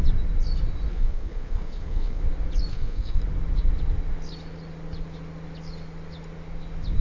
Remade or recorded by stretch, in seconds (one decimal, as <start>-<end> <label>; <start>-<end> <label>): 0.0-0.9 recorded; 0.9-2.2 remade; 2.2-2.7 recorded; 2.7-3.2 remade; 3.2-7.0 recorded